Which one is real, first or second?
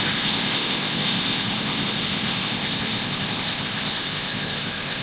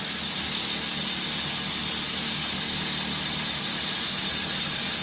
second